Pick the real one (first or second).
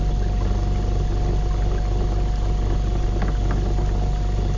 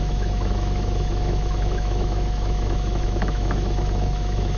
first